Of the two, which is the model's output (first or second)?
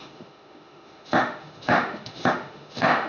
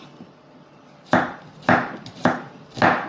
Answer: first